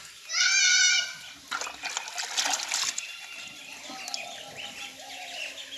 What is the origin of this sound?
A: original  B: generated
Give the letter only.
A